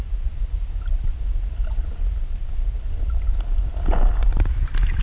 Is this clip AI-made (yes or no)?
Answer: no